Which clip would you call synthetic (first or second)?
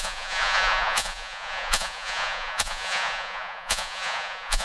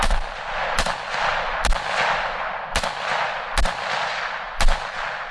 first